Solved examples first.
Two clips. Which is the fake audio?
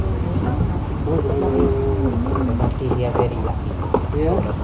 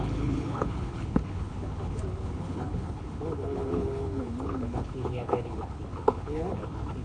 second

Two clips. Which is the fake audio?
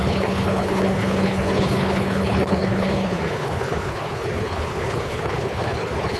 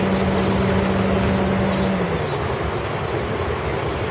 first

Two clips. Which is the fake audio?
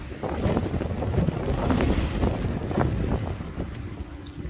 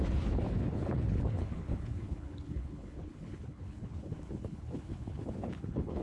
second